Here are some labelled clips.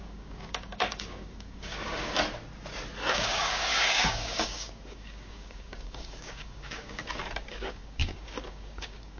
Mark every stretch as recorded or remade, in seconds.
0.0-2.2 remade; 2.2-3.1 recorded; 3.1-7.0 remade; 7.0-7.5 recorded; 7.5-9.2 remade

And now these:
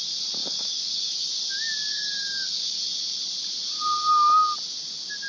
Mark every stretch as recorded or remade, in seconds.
0.0-0.4 recorded; 0.4-1.3 remade; 1.3-1.9 recorded; 1.9-2.8 remade; 2.8-5.3 recorded

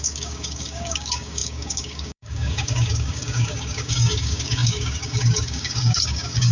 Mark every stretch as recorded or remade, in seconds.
0.0-6.5 remade

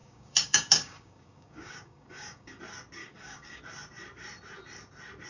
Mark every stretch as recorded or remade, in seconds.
0.0-2.6 remade; 2.6-3.0 recorded; 3.0-3.6 remade; 3.6-5.3 recorded

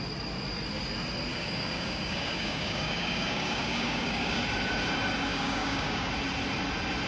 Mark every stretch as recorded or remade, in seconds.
0.0-1.3 recorded; 1.3-4.4 remade; 4.4-5.3 recorded; 5.3-6.1 remade; 6.1-7.1 recorded

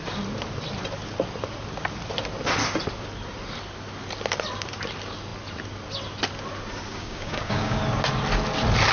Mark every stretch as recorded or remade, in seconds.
0.0-6.9 recorded; 6.9-7.8 remade; 7.8-8.9 recorded

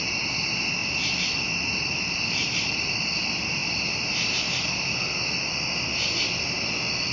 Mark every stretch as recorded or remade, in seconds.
0.0-7.1 recorded

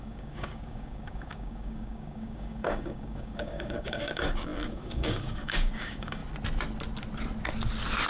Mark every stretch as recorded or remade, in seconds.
0.0-6.2 remade; 6.2-8.1 recorded